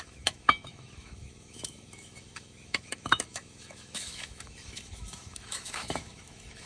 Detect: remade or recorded remade